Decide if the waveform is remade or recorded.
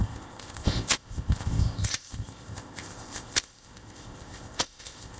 remade